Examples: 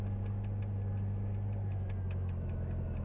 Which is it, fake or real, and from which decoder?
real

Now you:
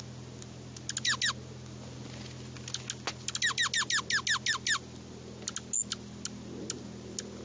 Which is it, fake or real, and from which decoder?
real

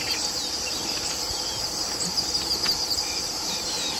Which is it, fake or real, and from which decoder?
fake, vocoder, BigVGAN v2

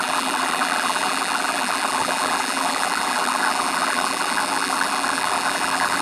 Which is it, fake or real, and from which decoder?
fake, vocoder, BigVGAN v2